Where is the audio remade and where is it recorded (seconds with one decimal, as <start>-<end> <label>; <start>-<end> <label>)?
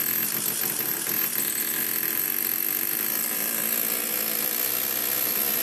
0.0-1.3 recorded; 1.3-4.7 remade; 4.7-5.6 recorded